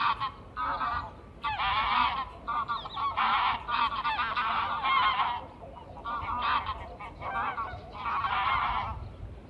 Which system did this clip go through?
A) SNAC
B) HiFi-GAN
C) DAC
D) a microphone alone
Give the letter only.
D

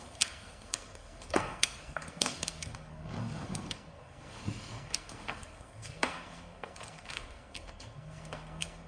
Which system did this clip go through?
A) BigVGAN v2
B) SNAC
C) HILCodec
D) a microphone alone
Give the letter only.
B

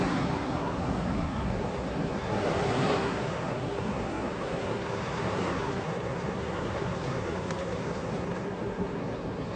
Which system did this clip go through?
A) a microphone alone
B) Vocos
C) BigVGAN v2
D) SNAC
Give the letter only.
D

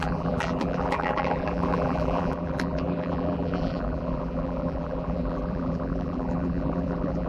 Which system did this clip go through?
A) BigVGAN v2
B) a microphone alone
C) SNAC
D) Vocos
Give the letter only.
A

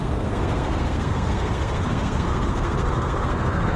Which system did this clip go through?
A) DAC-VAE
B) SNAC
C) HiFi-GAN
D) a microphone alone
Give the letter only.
B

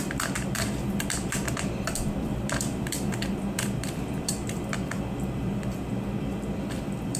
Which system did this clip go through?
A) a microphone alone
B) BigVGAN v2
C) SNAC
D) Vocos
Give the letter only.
B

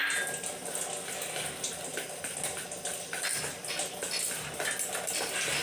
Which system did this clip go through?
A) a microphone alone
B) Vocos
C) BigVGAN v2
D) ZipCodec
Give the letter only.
A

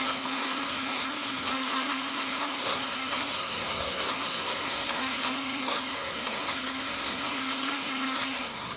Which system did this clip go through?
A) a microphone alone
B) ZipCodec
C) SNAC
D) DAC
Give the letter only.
C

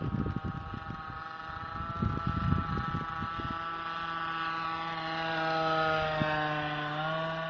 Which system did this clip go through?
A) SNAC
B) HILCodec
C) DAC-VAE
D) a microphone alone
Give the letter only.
D